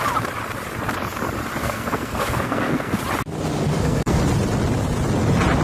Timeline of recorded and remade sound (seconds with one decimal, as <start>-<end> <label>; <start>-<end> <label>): 0.0-1.6 recorded; 1.6-3.0 remade; 3.0-3.7 recorded; 3.7-4.2 remade; 4.2-5.6 recorded